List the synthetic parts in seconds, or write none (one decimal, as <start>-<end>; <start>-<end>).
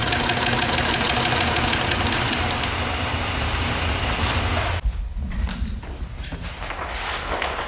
none